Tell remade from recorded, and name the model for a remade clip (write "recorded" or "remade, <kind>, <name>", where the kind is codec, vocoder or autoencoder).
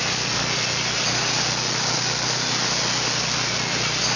recorded